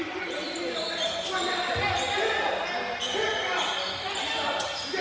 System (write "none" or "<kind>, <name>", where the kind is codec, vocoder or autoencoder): none